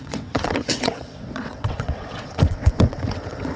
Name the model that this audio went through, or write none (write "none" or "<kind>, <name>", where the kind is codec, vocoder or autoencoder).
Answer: vocoder, WaveNeXt